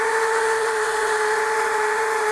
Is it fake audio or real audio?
fake